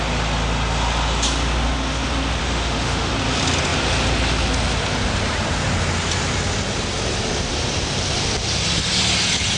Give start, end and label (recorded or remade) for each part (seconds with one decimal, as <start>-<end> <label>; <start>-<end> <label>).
0.0-2.4 recorded; 2.4-3.1 remade; 3.1-9.6 recorded